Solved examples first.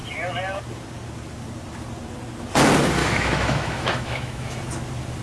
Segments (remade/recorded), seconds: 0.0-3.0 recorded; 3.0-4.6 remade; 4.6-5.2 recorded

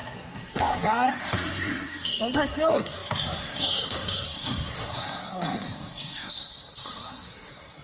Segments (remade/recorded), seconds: 0.0-7.8 remade

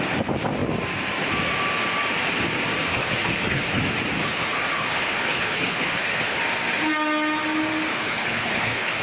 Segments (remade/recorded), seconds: 0.0-2.9 recorded; 2.9-3.8 remade; 3.8-4.2 recorded; 4.2-6.4 remade; 6.4-7.9 recorded; 7.9-9.0 remade

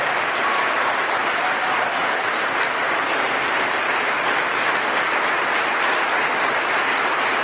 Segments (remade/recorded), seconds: 0.0-1.2 remade; 1.2-5.6 recorded; 5.6-7.4 remade

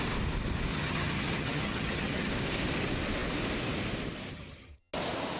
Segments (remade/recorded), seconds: 0.0-0.7 recorded; 0.7-2.3 remade; 2.3-4.3 recorded; 4.3-4.9 remade; 4.9-5.4 recorded

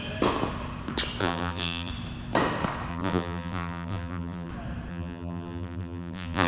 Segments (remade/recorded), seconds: 0.0-1.2 recorded; 1.2-1.9 remade; 1.9-2.9 recorded; 2.9-4.5 remade; 4.5-4.9 recorded; 4.9-6.5 remade

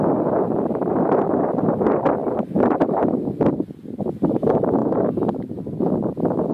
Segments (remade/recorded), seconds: 0.0-2.2 recorded; 2.2-3.5 remade; 3.5-6.5 recorded

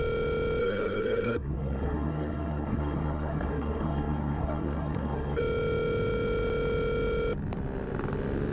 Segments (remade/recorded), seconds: 0.0-0.6 recorded; 0.6-5.4 remade; 5.4-8.5 recorded